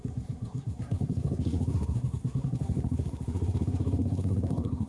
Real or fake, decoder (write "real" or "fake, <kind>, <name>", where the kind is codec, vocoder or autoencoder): fake, codec, SNAC